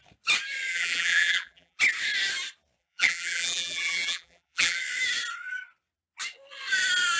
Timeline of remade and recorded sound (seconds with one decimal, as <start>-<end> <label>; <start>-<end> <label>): 0.0-0.7 recorded; 0.7-1.8 remade; 1.8-2.8 recorded; 2.8-4.8 remade; 4.8-7.2 recorded

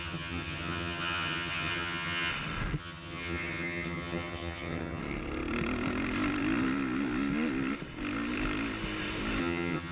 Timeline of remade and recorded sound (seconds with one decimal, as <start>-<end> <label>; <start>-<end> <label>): 0.0-2.3 remade; 2.3-2.8 recorded; 2.8-5.0 remade; 5.0-9.4 recorded; 9.4-9.9 remade

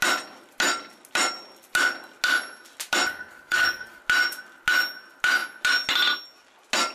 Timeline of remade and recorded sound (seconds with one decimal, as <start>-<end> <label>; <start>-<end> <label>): 0.0-3.1 recorded; 3.1-4.0 remade; 4.0-6.9 recorded

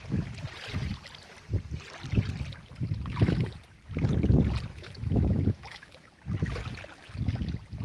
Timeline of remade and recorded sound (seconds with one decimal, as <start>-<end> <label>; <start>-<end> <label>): 0.0-4.7 recorded; 4.7-6.1 remade; 6.1-7.8 recorded

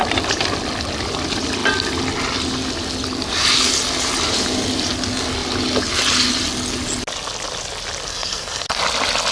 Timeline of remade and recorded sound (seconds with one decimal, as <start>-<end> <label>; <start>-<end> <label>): 0.0-8.1 recorded; 8.1-8.8 remade; 8.8-9.3 recorded